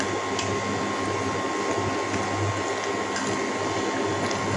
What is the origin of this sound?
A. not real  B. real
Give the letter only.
B